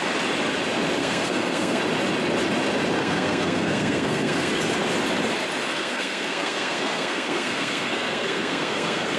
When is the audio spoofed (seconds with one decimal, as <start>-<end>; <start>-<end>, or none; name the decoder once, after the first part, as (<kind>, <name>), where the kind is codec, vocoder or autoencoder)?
1.0-1.8 (codec, SNAC); 3.0-4.5; 5.7-9.2